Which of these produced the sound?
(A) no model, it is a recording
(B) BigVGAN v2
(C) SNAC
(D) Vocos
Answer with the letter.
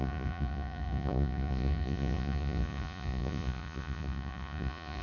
D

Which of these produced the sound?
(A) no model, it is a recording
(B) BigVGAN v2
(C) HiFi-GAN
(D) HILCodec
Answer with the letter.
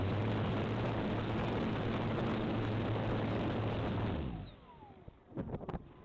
A